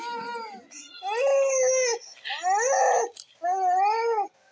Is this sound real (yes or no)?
yes